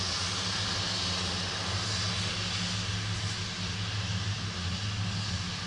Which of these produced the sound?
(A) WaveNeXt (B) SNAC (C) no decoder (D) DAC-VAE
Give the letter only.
C